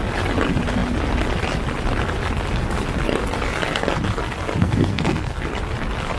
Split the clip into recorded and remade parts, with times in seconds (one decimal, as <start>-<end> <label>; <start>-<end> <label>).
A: 0.0-4.6 recorded; 4.6-5.4 remade; 5.4-6.2 recorded